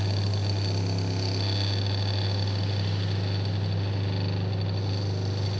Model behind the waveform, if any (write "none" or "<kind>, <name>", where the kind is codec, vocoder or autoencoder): none